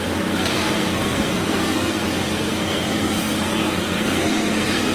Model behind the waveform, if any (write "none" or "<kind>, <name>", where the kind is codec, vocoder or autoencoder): codec, SNAC